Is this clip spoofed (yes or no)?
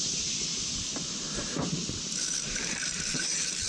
yes